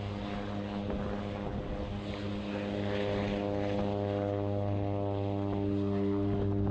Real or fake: real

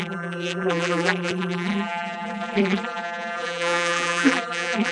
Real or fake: fake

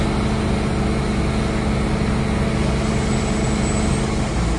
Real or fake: real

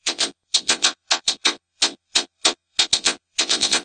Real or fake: fake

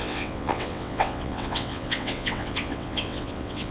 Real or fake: fake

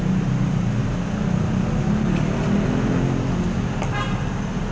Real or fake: real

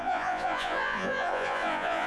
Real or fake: fake